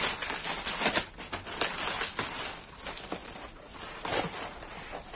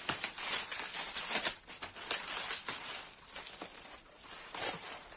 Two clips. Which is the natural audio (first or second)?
first